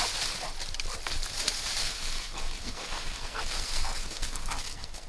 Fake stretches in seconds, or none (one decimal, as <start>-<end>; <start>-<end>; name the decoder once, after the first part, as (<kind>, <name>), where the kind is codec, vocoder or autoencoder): 1.8-5.1 (codec, SNAC)